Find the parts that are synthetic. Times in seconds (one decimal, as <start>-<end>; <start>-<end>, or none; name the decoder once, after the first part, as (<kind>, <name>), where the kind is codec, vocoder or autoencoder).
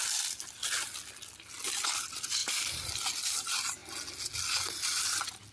none